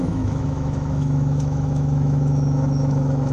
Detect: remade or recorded remade